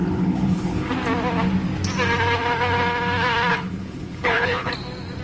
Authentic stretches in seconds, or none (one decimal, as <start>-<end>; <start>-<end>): 0.9-3.5; 4.7-5.2

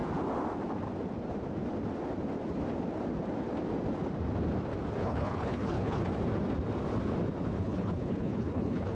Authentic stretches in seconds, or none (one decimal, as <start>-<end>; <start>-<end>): 0.0-5.0; 6.0-7.6

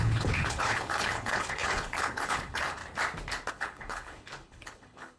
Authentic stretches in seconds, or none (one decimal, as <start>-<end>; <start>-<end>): 2.8-3.5

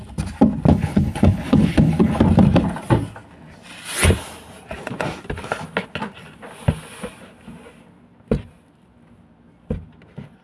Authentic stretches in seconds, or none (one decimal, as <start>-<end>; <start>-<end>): 0.0-0.7; 2.2-10.4